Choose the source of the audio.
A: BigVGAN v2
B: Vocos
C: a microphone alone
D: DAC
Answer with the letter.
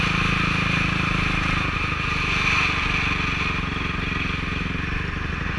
C